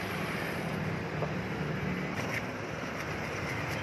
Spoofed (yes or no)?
yes